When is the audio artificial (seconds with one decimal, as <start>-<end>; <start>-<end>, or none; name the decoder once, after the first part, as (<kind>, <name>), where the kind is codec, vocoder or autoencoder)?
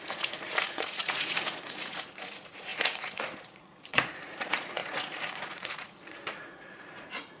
0.0-7.4 (vocoder, Vocos)